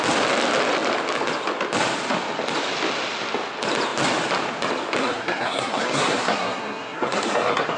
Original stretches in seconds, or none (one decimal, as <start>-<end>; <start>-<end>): 0.0-5.0